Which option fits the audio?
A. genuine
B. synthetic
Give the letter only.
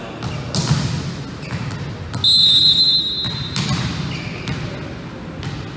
A